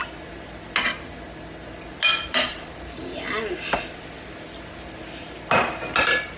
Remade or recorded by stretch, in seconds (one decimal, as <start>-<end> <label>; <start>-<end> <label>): 0.0-6.4 recorded